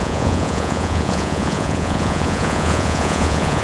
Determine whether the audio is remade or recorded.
remade